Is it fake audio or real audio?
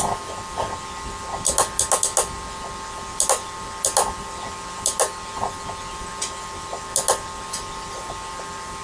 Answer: real